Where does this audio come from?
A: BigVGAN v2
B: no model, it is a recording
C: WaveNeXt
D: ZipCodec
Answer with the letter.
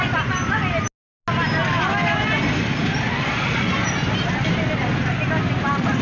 B